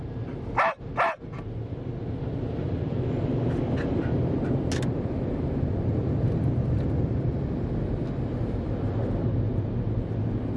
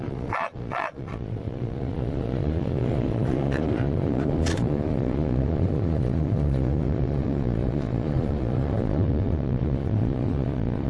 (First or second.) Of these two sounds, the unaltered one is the first